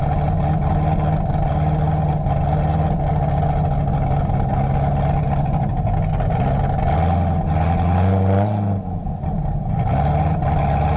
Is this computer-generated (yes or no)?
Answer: no